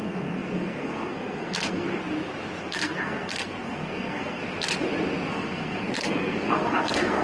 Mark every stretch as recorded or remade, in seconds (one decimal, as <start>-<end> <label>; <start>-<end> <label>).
0.0-2.0 remade; 2.0-2.6 recorded; 2.6-4.4 remade; 4.4-5.3 recorded; 5.3-7.2 remade